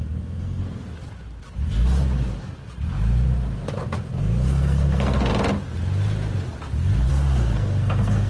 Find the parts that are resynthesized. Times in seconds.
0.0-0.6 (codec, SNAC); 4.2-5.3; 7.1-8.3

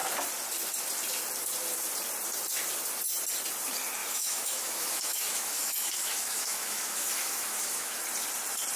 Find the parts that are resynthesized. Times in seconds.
4.0-8.0 (autoencoder, DAC-VAE)

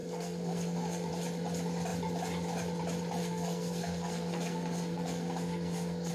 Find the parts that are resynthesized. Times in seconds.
0.0-1.1 (codec, SNAC); 3.2-6.1

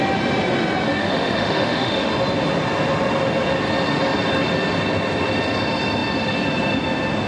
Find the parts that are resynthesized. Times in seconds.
1.0-2.1 (autoencoder, DAC-VAE)